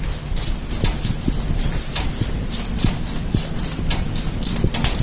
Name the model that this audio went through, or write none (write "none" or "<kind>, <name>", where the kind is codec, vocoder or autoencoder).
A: none